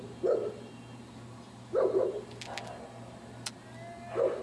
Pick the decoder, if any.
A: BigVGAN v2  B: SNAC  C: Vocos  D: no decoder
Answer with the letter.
D